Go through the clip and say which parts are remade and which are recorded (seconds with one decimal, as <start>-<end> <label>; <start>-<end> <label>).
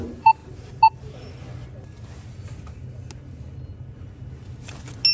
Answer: 0.0-5.1 recorded